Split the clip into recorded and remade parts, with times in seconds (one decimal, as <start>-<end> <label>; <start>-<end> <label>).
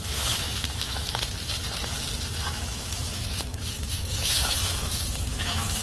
0.0-1.5 remade; 1.5-2.5 recorded; 2.5-5.8 remade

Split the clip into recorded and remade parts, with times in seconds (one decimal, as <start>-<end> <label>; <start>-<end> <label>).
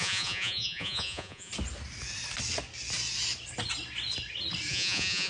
0.0-1.5 remade; 1.5-4.7 recorded; 4.7-5.3 remade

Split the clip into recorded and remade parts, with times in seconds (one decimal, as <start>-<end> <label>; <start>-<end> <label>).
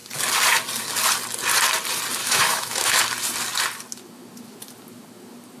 0.0-2.2 recorded; 2.2-3.0 remade; 3.0-5.6 recorded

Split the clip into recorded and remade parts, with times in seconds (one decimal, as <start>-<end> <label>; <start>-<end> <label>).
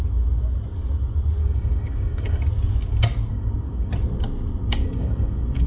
0.0-1.4 recorded; 1.4-2.4 remade; 2.4-3.3 recorded; 3.3-3.9 remade; 3.9-4.6 recorded; 4.6-5.7 remade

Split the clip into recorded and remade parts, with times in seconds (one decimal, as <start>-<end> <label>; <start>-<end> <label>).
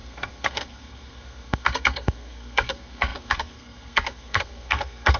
0.0-5.2 remade